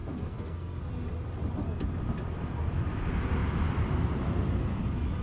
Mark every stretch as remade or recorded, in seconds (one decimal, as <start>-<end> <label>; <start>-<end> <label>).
0.0-0.8 remade; 0.8-5.2 recorded

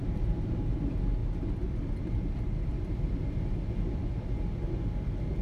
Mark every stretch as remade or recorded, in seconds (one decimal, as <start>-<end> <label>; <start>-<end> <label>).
0.0-1.2 recorded; 1.2-4.3 remade; 4.3-5.4 recorded

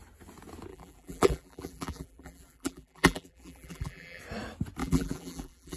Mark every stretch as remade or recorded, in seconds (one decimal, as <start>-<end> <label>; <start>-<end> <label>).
0.0-0.7 recorded; 0.7-4.2 remade; 4.2-4.8 recorded; 4.8-5.8 remade

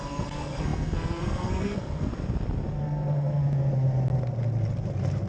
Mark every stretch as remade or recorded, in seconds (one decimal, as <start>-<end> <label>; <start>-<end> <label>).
0.0-2.1 remade; 2.1-2.8 recorded; 2.8-3.4 remade; 3.4-5.3 recorded

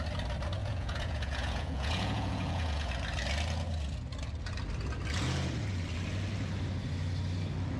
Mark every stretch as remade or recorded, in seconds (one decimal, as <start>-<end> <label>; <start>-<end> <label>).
0.0-0.6 recorded; 0.6-2.9 remade; 2.9-7.8 recorded

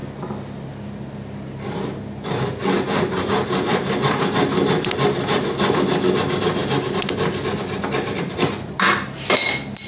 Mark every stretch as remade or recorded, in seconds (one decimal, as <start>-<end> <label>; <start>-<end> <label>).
0.0-9.9 recorded

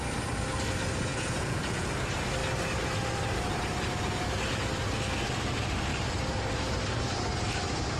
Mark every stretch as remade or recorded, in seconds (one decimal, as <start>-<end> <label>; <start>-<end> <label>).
0.0-1.1 recorded; 1.1-1.9 remade; 1.9-8.0 recorded